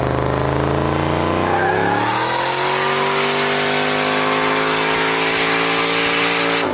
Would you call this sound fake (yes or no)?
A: no